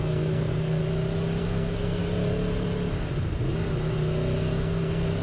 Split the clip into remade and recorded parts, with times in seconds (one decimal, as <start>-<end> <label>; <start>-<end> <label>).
0.0-0.8 remade; 0.8-1.4 recorded; 1.4-2.0 remade; 2.0-4.4 recorded; 4.4-5.2 remade